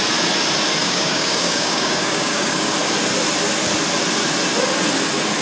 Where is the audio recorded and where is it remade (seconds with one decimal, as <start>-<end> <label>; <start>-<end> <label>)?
0.0-0.8 recorded; 0.8-2.7 remade; 2.7-5.4 recorded